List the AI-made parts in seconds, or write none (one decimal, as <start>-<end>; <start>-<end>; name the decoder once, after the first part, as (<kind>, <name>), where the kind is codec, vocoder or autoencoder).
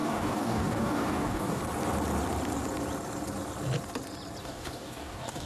0.0-1.6 (codec, DAC); 4.4-5.5